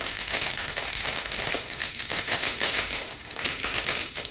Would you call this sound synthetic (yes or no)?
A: yes